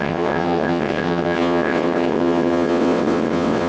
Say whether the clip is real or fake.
fake